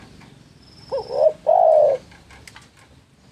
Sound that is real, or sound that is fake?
real